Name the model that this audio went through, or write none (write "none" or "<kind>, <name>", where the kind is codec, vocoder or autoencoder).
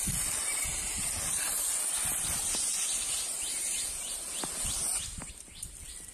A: none